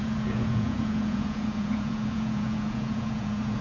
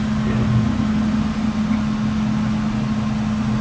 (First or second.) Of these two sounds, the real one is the second